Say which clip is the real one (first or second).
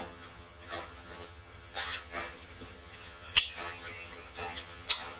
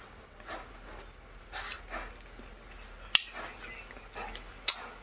second